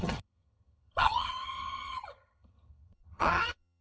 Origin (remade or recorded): remade